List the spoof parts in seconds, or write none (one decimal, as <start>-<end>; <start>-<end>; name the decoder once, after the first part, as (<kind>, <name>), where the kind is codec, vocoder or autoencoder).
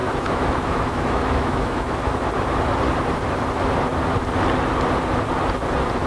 0.0-2.3 (autoencoder, DAC-VAE)